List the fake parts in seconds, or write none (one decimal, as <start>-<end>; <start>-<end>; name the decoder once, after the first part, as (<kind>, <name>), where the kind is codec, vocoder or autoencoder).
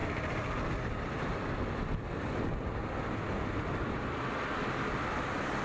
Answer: none